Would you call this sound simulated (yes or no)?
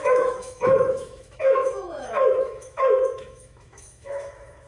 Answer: yes